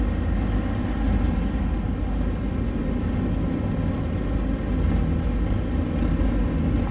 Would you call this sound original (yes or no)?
yes